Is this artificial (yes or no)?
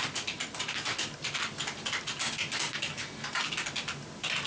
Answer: no